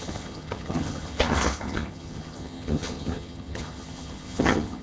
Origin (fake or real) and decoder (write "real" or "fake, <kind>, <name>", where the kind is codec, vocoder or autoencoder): fake, vocoder, HiFi-GAN